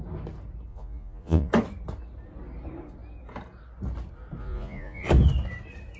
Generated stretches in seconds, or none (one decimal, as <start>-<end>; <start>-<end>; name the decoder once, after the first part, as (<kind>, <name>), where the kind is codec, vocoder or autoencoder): 0.7-1.5 (vocoder, Vocos); 4.4-5.1